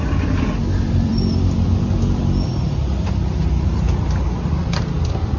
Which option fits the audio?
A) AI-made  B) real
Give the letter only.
A